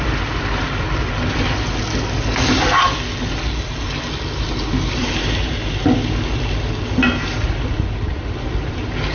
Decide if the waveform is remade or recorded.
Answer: recorded